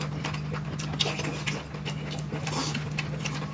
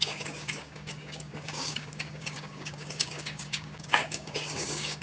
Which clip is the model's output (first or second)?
second